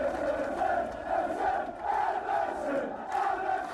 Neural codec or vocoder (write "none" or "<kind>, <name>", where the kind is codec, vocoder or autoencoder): none